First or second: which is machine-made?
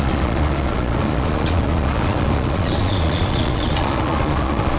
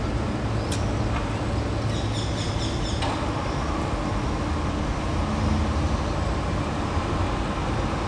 first